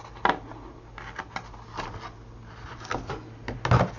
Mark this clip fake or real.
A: real